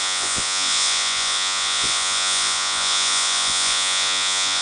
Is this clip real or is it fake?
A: fake